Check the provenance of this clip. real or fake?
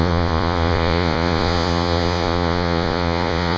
fake